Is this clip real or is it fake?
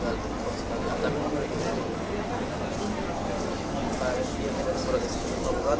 real